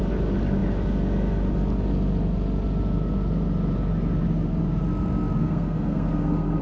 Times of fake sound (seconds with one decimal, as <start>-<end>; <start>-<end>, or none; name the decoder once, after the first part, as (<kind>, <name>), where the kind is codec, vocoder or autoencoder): 5.4-6.6 (codec, SNAC)

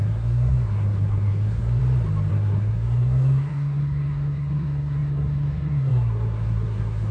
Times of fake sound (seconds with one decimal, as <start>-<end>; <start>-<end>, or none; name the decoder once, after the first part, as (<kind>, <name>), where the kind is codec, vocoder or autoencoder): 0.0-1.8 (codec, SNAC); 2.3-7.1

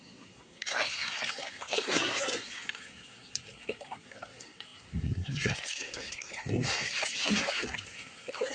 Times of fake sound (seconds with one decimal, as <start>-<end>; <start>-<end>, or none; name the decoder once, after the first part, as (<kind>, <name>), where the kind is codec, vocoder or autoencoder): 0.0-8.5 (codec, SNAC)

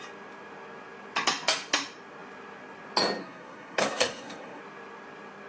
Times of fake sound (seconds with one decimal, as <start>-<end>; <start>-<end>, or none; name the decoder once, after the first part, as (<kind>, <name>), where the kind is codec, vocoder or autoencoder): 3.2-4.6 (codec, SNAC)

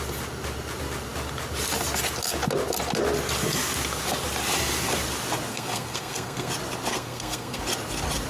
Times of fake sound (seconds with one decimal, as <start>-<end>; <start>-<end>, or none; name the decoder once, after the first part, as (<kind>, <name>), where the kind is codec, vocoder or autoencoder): 5.5-6.5 (codec, SNAC); 6.9-7.6